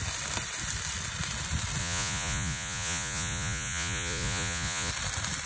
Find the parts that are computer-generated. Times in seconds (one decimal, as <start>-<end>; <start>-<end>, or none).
1.8-4.9